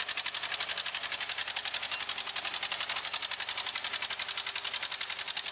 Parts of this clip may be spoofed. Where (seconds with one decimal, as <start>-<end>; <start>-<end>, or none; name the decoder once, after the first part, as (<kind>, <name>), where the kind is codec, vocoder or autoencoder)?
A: none